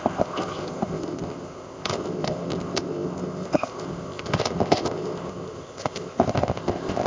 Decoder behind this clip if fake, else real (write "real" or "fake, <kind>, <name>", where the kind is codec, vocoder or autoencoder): fake, codec, ZipCodec